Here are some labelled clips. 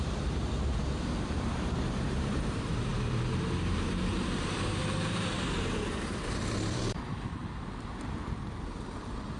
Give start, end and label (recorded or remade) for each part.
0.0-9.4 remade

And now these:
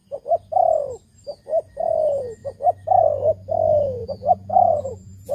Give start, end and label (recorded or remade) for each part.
0.0-4.0 recorded; 4.0-5.3 remade

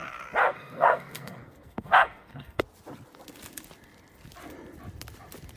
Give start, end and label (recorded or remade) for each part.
0.0-0.4 recorded; 0.4-2.6 remade; 2.6-5.6 recorded

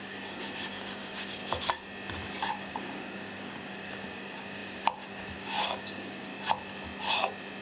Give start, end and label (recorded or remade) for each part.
0.0-1.4 remade; 1.4-2.5 recorded; 2.5-6.3 remade; 6.3-7.6 recorded

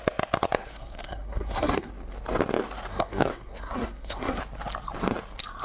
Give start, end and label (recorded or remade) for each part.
0.0-0.6 recorded; 0.6-1.9 remade; 1.9-2.9 recorded; 2.9-4.4 remade; 4.4-5.6 recorded

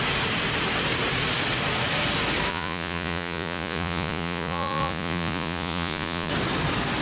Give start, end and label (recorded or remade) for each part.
0.0-2.5 recorded; 2.5-6.3 remade; 6.3-7.0 recorded

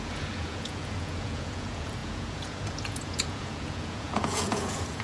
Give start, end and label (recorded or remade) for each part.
0.0-5.0 remade